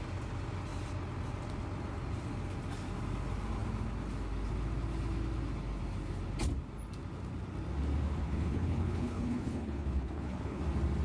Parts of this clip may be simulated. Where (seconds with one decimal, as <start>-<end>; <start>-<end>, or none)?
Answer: 8.2-10.6